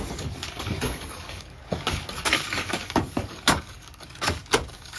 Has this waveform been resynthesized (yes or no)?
yes